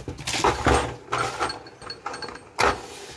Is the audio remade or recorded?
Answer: recorded